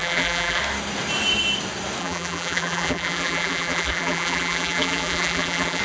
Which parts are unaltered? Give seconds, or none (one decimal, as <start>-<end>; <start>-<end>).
0.6-2.0